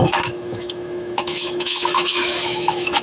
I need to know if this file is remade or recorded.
remade